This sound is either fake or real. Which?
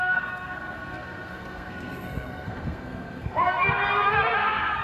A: fake